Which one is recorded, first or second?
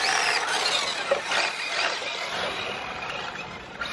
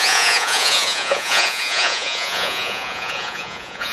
first